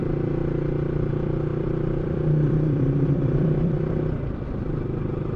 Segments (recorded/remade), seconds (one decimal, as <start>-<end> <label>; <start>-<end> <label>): 0.0-1.5 recorded; 1.5-4.0 remade; 4.0-5.4 recorded